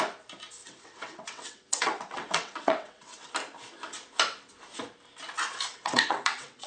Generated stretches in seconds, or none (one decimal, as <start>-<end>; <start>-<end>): 0.6-3.3; 5.7-6.7